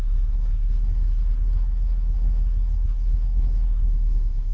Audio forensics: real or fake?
fake